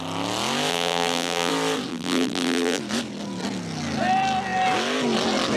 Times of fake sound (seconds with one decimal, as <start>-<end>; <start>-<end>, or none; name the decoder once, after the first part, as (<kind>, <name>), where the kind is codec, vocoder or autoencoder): 0.7-1.5 (vocoder, BigVGAN v2); 1.9-2.8